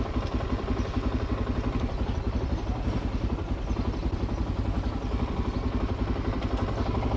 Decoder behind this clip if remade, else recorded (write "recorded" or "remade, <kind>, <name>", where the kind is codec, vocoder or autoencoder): recorded